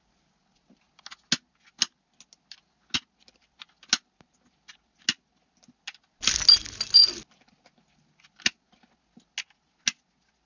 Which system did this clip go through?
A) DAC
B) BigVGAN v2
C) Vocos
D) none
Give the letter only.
D